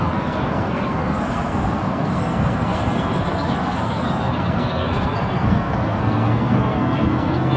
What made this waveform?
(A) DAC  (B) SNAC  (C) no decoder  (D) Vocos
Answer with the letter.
B